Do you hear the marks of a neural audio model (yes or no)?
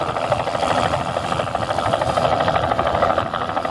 no